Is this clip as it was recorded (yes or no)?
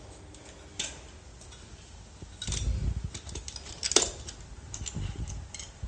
yes